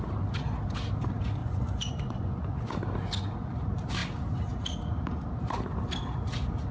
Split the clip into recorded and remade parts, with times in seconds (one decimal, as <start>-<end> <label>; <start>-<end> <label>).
0.0-1.4 recorded; 1.4-2.7 remade; 2.7-6.7 recorded